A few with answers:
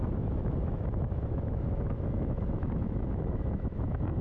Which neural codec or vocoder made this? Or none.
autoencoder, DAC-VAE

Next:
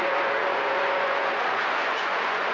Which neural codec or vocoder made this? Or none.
vocoder, Vocos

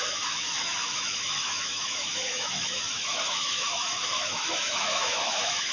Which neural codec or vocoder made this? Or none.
autoencoder, DAC-VAE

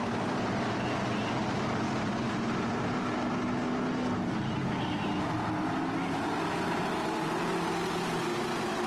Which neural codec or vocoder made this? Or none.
none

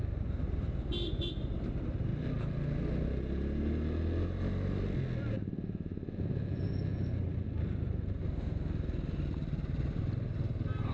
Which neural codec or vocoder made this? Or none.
none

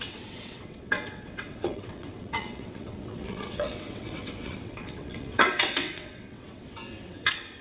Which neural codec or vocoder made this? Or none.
vocoder, WaveNeXt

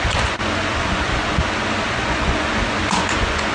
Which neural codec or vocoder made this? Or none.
vocoder, Vocos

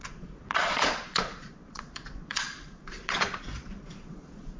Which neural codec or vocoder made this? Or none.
vocoder, Vocos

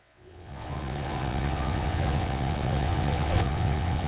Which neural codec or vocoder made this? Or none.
vocoder, WaveNeXt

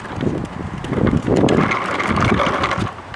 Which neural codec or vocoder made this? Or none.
none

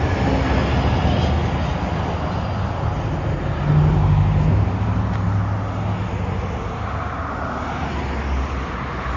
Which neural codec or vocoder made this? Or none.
none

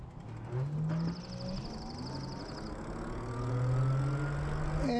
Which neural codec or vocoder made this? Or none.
none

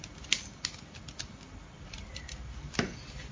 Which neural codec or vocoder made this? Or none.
none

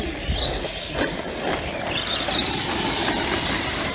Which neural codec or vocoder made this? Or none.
none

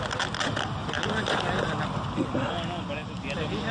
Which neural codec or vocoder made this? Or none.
none